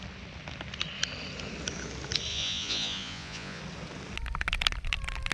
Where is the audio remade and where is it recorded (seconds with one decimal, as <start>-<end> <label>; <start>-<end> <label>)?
0.0-2.3 recorded; 2.3-3.6 remade; 3.6-5.3 recorded